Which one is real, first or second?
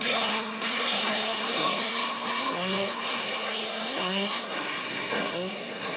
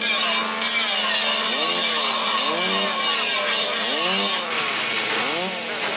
second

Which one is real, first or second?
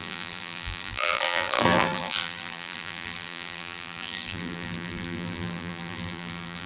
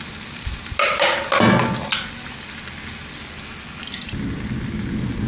second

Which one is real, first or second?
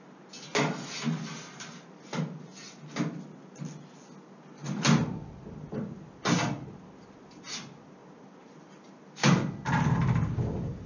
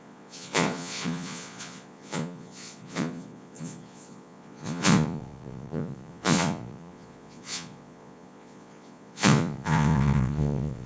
first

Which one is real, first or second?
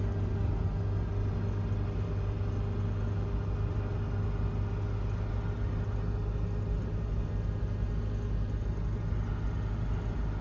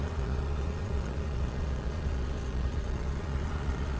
first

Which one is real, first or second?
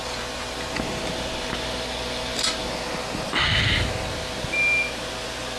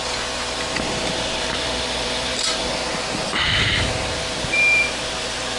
first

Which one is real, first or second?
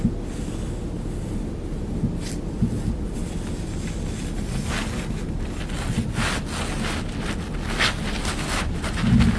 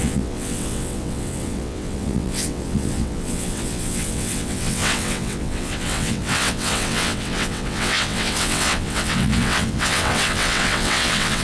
first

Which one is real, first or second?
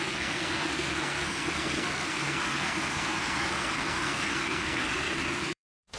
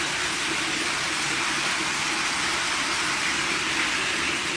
second